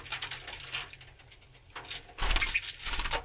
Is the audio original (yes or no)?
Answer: yes